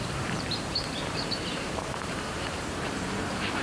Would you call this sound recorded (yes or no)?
no